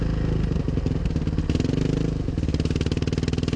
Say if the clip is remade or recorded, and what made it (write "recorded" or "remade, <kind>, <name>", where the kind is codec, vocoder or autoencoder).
recorded